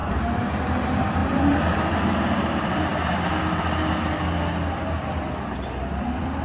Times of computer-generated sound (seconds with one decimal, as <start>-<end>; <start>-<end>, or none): 0.6-2.9; 5.9-6.4